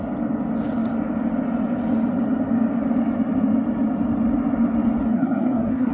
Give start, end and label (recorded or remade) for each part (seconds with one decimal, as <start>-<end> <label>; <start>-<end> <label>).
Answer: 0.0-5.1 recorded; 5.1-5.9 remade